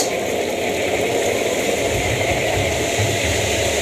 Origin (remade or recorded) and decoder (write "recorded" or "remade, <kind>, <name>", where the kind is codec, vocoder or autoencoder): remade, vocoder, BigVGAN v2